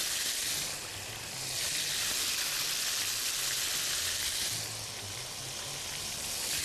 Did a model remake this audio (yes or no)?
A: no